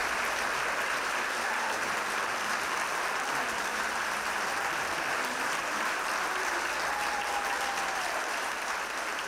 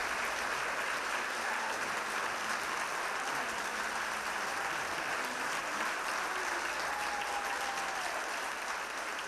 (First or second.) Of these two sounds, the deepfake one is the first